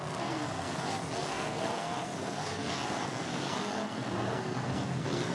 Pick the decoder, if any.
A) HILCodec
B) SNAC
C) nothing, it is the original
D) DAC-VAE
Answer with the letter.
B